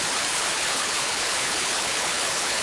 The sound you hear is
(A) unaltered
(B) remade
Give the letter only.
B